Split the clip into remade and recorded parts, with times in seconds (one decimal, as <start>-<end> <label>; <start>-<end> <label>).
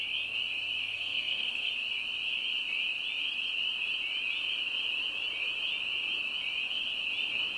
0.0-0.8 recorded; 0.8-1.7 remade; 1.7-7.6 recorded